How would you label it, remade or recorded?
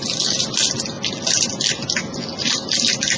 recorded